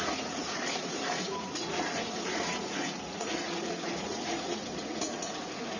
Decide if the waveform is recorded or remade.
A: remade